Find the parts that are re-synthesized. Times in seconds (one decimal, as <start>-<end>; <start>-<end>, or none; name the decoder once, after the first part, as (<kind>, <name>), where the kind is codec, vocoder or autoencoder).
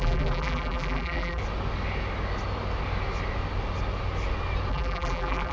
0.0-1.4 (vocoder, BigVGAN v2); 4.7-5.5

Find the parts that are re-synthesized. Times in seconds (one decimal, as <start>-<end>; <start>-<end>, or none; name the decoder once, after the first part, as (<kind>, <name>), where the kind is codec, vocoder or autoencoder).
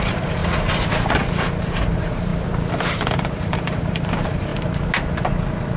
0.0-0.4 (vocoder, BigVGAN v2); 1.1-2.3; 2.9-4.5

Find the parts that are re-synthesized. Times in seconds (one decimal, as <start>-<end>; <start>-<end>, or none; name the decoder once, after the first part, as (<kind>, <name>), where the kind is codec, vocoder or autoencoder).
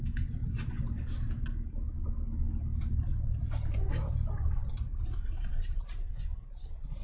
0.4-1.1 (vocoder, BigVGAN v2); 3.1-6.1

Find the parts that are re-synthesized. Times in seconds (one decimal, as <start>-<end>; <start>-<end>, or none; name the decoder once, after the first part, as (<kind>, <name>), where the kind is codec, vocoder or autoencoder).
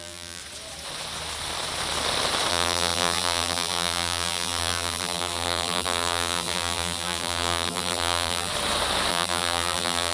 0.0-0.4 (vocoder, BigVGAN v2); 2.5-8.5; 9.1-10.1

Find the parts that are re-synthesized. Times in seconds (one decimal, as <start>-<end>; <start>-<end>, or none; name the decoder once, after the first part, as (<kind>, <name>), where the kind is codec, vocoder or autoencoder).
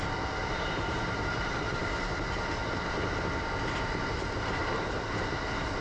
0.4-1.8 (vocoder, BigVGAN v2)